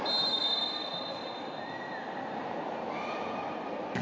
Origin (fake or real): real